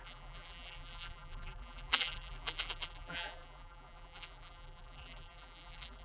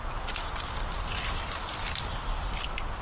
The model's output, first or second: first